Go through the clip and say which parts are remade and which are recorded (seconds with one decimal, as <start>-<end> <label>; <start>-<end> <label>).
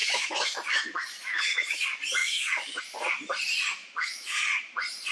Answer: 0.0-1.8 remade; 1.8-2.2 recorded; 2.2-2.8 remade; 2.8-3.7 recorded; 3.7-4.4 remade; 4.4-5.1 recorded